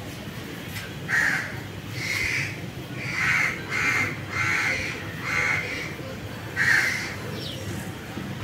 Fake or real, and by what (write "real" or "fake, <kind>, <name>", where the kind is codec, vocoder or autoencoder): real